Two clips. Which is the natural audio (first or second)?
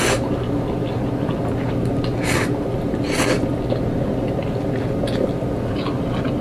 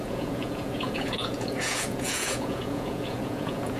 first